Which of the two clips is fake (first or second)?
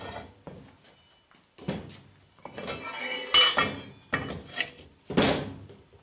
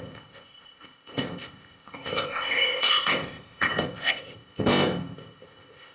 second